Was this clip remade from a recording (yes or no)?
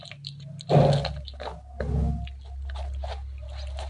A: no